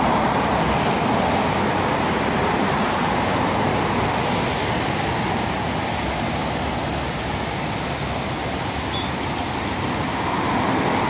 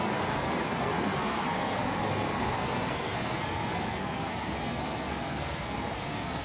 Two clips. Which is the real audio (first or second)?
first